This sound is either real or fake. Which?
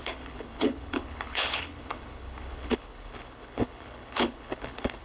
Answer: fake